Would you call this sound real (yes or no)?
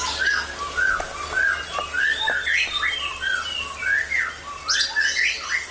yes